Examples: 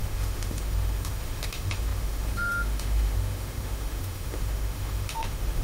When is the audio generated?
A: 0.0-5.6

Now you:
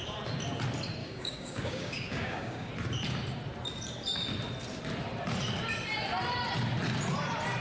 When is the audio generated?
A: 1.0-2.7

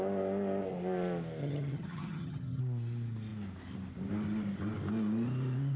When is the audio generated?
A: 1.4-2.6

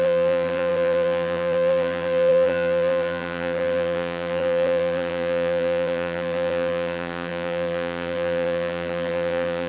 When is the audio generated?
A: 0.0-9.7